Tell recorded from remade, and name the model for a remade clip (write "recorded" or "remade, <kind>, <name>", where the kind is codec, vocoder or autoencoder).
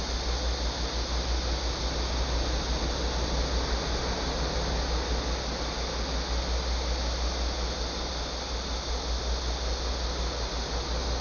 recorded